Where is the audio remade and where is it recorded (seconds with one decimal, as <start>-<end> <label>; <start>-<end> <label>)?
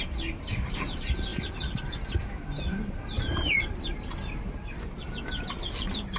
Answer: 0.0-1.3 remade; 1.3-5.0 recorded; 5.0-6.2 remade